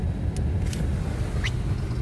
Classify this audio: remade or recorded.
recorded